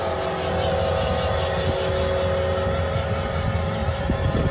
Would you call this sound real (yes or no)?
yes